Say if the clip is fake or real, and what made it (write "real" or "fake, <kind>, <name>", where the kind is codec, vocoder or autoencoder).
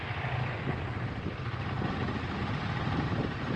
real